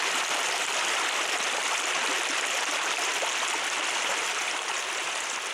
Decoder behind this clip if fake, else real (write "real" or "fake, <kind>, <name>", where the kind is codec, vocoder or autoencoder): fake, vocoder, BigVGAN v2